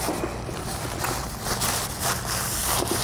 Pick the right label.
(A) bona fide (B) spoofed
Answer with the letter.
A